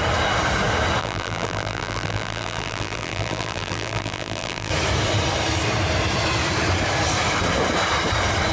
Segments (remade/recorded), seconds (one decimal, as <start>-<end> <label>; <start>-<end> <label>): 0.0-1.0 recorded; 1.0-4.7 remade; 4.7-8.5 recorded